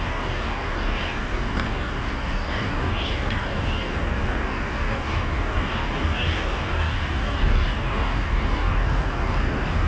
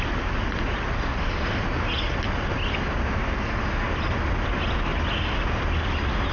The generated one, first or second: first